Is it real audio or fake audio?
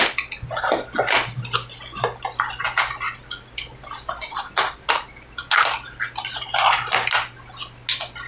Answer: real